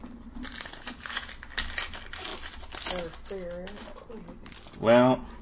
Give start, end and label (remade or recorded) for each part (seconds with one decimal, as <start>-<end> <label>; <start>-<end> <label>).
0.0-0.7 recorded; 0.7-1.3 remade; 1.3-5.4 recorded